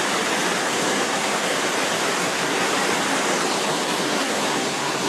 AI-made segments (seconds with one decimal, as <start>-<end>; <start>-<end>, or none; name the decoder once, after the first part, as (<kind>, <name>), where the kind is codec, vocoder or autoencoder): 0.6-1.6 (codec, SNAC); 2.2-2.7; 3.7-5.1